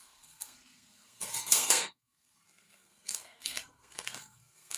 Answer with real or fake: fake